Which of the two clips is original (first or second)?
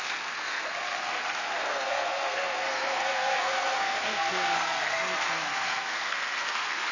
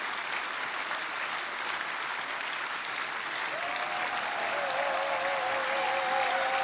second